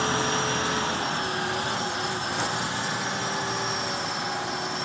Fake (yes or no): no